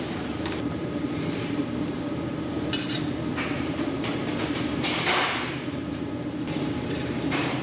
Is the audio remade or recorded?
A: remade